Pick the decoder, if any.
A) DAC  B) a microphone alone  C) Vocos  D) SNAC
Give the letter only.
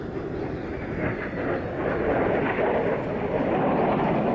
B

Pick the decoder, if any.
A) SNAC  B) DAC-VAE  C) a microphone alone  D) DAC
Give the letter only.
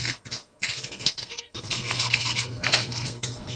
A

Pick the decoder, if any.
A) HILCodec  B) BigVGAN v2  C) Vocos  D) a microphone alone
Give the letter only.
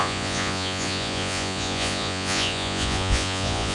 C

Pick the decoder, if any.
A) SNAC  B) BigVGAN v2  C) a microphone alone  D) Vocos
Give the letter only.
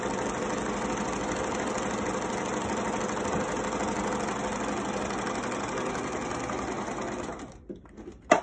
C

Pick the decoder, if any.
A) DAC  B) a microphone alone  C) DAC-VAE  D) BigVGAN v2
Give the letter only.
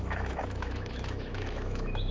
C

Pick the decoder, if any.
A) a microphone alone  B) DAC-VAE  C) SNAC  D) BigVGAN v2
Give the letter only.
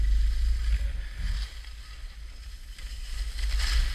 A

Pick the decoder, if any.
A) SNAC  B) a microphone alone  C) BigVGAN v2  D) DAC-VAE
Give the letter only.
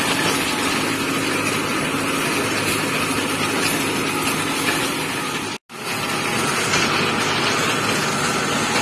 B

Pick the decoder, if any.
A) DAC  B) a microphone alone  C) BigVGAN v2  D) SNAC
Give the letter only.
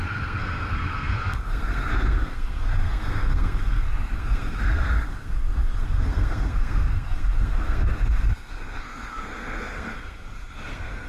D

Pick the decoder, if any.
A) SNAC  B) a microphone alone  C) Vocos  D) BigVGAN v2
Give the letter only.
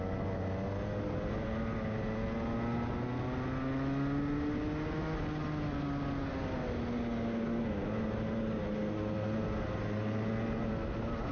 B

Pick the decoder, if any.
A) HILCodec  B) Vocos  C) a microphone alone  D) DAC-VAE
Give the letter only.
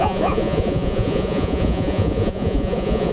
B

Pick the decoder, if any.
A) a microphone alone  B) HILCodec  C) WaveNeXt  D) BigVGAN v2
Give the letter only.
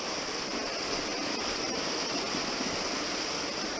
A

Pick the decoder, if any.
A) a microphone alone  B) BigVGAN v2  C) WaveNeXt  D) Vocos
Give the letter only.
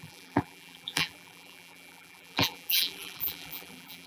B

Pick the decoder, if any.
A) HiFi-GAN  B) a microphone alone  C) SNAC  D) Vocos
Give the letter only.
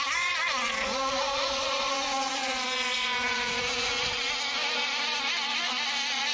D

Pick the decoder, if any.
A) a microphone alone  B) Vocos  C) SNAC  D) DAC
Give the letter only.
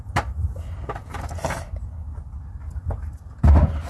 A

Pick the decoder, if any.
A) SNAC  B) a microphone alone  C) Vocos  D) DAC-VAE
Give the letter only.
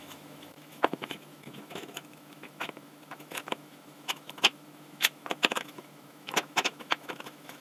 D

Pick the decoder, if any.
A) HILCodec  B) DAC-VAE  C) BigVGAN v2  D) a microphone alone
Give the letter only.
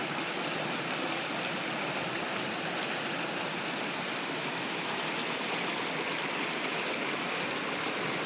D